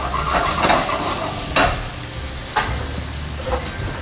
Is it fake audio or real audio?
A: real